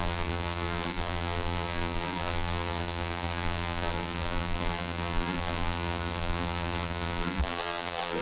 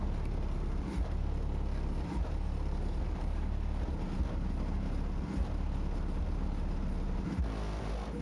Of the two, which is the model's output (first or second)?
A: first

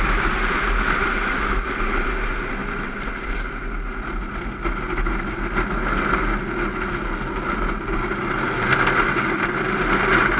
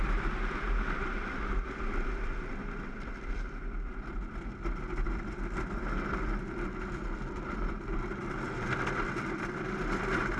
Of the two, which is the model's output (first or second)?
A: second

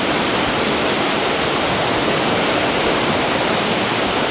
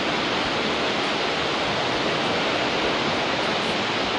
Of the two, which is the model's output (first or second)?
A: first